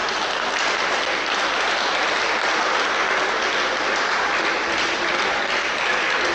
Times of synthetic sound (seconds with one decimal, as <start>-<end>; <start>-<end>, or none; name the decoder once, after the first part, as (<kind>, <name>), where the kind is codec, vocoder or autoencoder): 3.8-6.3 (vocoder, BigVGAN v2)